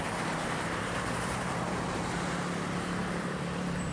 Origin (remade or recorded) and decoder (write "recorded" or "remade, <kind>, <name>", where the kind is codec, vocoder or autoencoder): remade, vocoder, BigVGAN v2